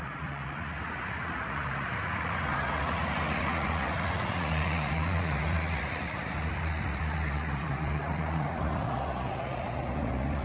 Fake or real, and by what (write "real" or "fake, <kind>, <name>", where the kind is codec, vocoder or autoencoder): fake, vocoder, Vocos